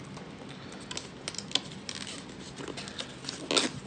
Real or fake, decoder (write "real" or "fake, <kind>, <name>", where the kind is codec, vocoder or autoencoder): real